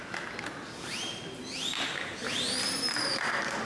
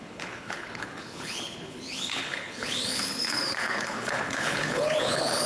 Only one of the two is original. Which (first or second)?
first